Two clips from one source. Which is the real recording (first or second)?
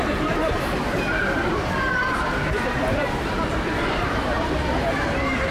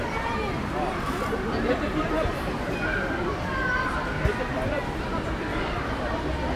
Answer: second